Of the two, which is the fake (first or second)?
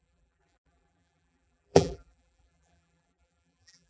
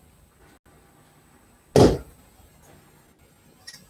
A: first